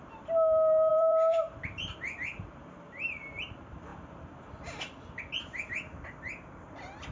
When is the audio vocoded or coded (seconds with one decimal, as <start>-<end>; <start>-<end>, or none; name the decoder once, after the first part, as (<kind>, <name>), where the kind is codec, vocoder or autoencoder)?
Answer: 0.9-3.5 (vocoder, BigVGAN v2)